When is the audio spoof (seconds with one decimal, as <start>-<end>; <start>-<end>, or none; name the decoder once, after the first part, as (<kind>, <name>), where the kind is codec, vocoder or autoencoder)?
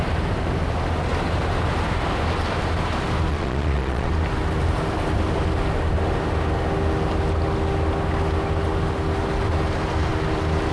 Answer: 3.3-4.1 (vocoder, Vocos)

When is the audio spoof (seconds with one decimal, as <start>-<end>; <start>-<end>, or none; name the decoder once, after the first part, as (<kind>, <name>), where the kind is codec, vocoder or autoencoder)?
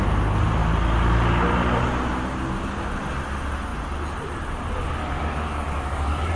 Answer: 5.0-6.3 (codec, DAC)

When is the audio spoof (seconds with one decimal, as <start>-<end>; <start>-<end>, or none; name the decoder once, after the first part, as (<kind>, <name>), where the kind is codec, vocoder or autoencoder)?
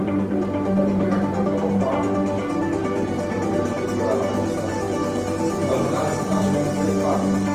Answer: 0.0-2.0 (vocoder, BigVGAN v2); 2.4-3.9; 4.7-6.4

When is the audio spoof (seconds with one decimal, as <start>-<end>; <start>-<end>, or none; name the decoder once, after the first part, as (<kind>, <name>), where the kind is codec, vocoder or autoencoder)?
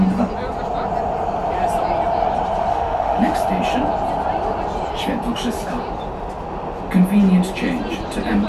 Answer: 2.7-3.2 (autoencoder, DAC-VAE)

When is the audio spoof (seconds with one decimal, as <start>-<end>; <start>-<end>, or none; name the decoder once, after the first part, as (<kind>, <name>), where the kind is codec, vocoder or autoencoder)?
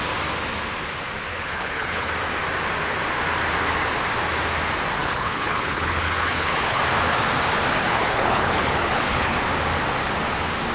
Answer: 1.3-2.1 (codec, HILCodec); 5.0-6.8; 7.8-9.4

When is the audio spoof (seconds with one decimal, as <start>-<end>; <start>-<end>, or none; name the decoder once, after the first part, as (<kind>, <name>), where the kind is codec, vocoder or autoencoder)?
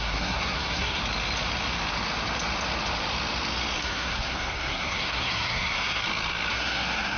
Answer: 0.0-1.0 (codec, SNAC); 3.8-6.0; 6.5-7.2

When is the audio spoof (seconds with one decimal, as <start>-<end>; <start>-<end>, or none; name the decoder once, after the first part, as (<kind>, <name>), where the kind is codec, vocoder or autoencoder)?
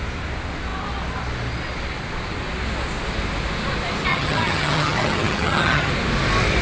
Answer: 4.1-5.9 (vocoder, HiFi-GAN)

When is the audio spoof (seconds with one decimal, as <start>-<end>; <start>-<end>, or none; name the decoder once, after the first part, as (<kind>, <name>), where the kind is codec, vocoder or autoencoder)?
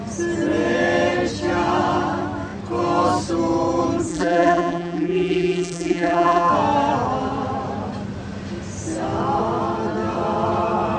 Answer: 4.1-6.5 (vocoder, BigVGAN v2)